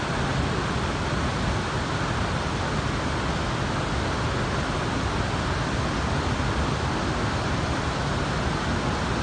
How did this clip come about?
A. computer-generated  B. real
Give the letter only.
B